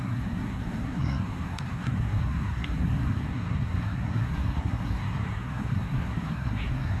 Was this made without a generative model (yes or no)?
no